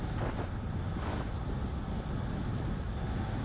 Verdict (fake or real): real